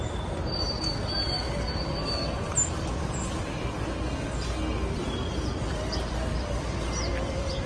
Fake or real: real